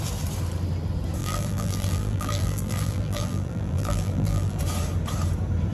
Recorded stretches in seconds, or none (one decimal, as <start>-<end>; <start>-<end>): 0.0-1.2; 4.6-5.7